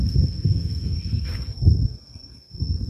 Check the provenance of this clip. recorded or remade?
remade